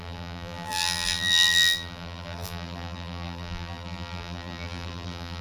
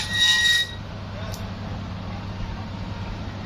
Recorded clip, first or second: second